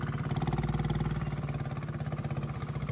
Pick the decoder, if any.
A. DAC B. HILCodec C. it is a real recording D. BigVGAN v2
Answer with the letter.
D